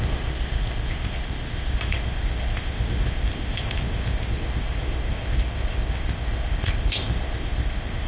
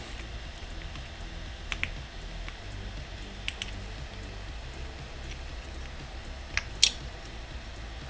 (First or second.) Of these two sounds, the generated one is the first